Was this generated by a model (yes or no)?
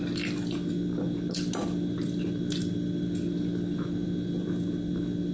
no